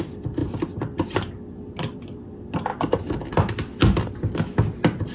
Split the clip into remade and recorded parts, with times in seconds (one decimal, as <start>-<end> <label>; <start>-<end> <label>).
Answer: 0.0-5.1 recorded